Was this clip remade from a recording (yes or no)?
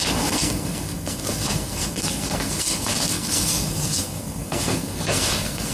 yes